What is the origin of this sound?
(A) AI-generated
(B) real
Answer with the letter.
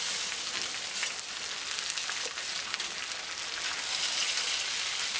B